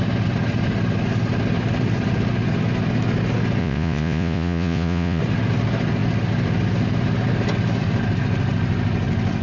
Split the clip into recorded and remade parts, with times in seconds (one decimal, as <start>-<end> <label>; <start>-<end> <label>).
0.0-3.6 recorded; 3.6-5.2 remade; 5.2-9.4 recorded